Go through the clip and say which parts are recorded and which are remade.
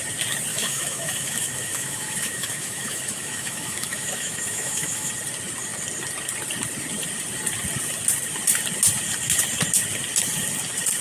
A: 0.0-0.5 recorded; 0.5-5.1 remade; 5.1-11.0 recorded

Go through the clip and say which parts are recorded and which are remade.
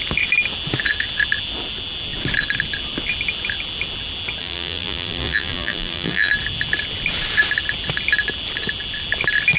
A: 0.0-4.4 recorded; 4.4-6.3 remade; 6.3-9.6 recorded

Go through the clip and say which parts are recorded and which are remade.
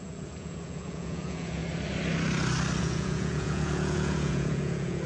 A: 0.0-1.6 remade; 1.6-2.8 recorded; 2.8-5.1 remade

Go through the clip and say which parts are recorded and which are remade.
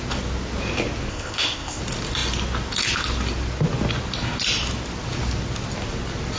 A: 0.0-1.1 recorded; 1.1-1.8 remade; 1.8-6.4 recorded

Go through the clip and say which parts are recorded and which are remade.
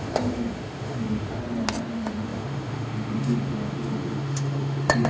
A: 0.0-1.4 remade; 1.4-1.9 recorded; 1.9-5.1 remade